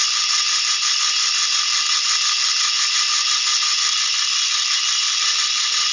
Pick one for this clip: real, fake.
real